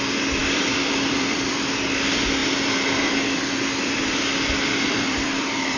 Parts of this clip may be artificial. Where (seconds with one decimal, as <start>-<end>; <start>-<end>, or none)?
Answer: 0.4-1.8; 2.4-5.8